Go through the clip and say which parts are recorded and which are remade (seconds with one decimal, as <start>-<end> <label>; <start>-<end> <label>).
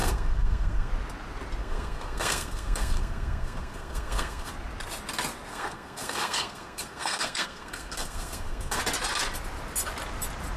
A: 0.0-0.9 remade; 0.9-1.6 recorded; 1.6-4.5 remade; 4.5-5.5 recorded; 5.5-8.8 remade; 8.8-10.6 recorded